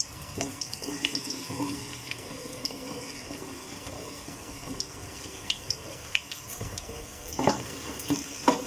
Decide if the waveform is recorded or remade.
remade